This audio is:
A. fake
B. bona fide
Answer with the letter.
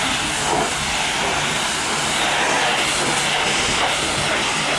B